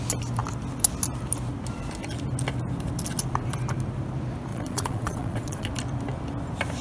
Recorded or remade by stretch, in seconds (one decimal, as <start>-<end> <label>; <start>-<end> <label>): 0.0-4.5 recorded; 4.5-5.7 remade; 5.7-6.8 recorded